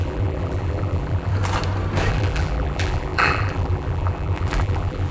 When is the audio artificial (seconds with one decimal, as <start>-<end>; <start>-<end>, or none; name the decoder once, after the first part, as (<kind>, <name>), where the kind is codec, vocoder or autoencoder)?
0.0-1.3 (vocoder, BigVGAN v2); 2.1-5.1